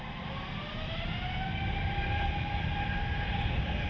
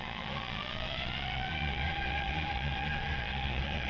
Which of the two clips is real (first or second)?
first